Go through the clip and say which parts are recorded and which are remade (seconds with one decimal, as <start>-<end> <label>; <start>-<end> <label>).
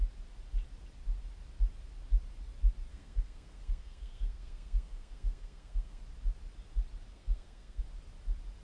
0.0-2.9 recorded; 2.9-6.0 remade; 6.0-7.1 recorded; 7.1-7.8 remade; 7.8-8.6 recorded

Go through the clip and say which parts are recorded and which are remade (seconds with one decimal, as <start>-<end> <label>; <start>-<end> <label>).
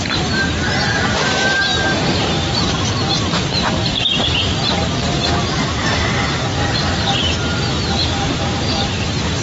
0.0-1.7 recorded; 1.7-2.7 remade; 2.7-9.4 recorded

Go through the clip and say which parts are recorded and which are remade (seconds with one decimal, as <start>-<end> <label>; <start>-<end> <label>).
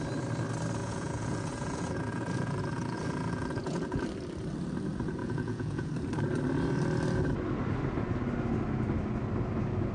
0.0-0.8 recorded; 0.8-4.0 remade; 4.0-5.2 recorded; 5.2-5.9 remade; 5.9-9.9 recorded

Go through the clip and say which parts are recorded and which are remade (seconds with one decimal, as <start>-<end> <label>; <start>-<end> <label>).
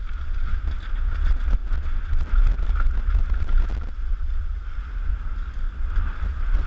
0.0-6.7 recorded